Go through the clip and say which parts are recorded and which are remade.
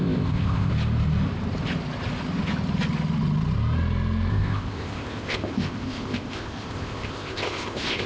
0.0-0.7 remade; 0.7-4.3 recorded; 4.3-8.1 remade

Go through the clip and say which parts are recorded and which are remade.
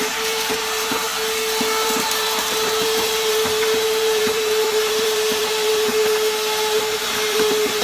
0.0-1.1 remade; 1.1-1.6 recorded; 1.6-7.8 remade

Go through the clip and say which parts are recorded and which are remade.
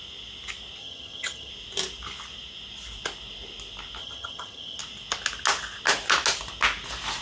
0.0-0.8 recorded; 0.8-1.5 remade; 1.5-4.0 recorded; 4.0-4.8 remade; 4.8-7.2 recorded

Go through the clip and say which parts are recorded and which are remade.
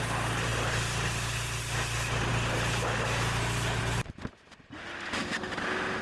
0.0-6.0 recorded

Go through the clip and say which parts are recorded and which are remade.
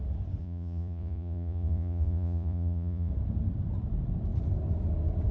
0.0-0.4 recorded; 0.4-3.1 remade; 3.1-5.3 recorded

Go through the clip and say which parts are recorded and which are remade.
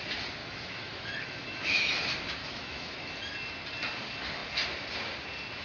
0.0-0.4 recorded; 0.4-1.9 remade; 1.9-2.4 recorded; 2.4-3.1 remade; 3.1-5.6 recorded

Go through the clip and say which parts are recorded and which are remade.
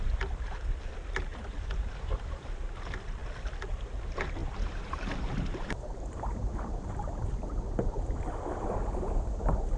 0.0-4.4 recorded; 4.4-6.9 remade; 6.9-9.8 recorded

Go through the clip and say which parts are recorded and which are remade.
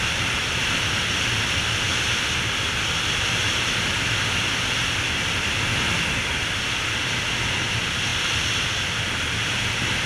0.0-10.1 recorded